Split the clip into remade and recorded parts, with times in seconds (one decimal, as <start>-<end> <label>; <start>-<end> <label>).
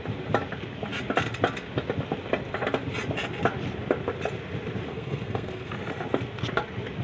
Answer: 0.0-4.9 recorded; 4.9-5.7 remade; 5.7-7.0 recorded